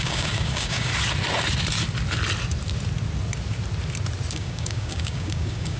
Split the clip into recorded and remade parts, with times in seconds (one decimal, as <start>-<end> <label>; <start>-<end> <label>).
0.0-0.9 remade; 0.9-4.3 recorded; 4.3-5.8 remade